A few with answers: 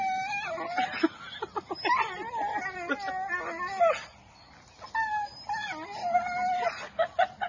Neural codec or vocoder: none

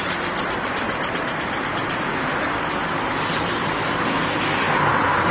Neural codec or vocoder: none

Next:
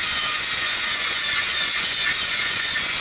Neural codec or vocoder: vocoder, Vocos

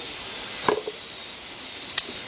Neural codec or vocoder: vocoder, BigVGAN v2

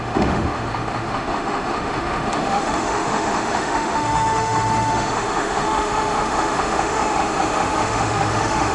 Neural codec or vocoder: autoencoder, DAC-VAE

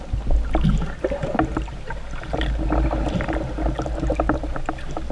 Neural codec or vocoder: none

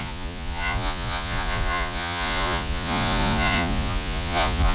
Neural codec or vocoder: vocoder, Vocos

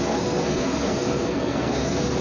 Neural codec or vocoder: codec, SNAC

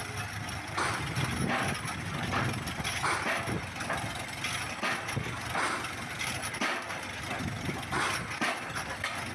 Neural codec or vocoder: none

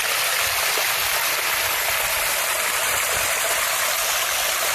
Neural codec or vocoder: none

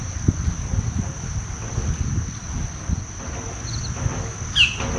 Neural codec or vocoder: none